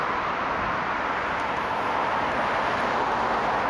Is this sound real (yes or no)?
yes